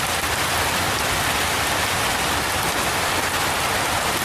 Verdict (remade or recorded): recorded